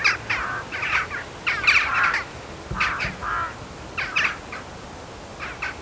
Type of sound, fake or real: real